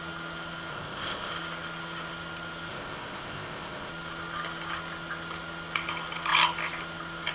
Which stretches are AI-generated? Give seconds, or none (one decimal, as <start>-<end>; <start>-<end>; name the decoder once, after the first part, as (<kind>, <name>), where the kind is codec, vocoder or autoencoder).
0.7-1.3 (codec, ZipCodec); 2.7-3.9